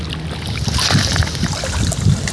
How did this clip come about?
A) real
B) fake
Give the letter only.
A